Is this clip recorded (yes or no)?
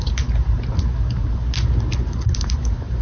yes